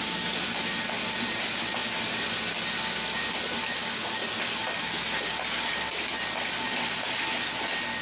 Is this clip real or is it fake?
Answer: real